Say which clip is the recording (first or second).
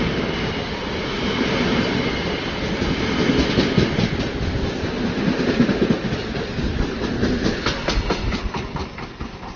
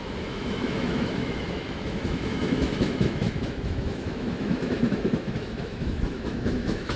first